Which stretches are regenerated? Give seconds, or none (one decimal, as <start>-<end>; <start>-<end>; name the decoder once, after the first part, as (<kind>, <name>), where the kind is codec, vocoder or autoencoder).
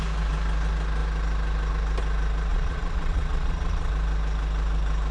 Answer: 2.5-3.9 (vocoder, Vocos)